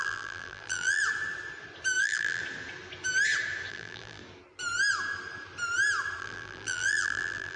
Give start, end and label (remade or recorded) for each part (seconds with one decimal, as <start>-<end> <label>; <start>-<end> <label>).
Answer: 0.0-1.0 remade; 1.0-2.0 recorded; 2.0-2.4 remade; 2.4-3.7 recorded; 3.7-4.2 remade; 4.2-6.2 recorded; 6.2-7.6 remade

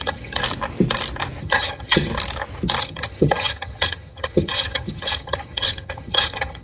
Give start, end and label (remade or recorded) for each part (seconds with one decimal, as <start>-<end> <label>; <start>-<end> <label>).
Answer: 0.0-0.4 remade; 0.4-1.4 recorded; 1.4-2.1 remade; 2.1-2.8 recorded; 2.8-6.6 remade

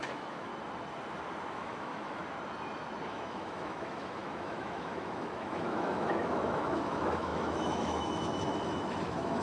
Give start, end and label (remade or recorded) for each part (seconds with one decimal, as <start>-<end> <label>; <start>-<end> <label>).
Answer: 0.0-0.5 remade; 0.5-1.5 recorded; 1.5-2.2 remade; 2.2-3.1 recorded; 3.1-9.4 remade